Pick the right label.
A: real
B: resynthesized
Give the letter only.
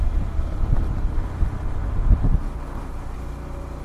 A